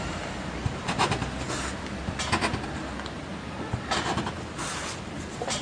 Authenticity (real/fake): real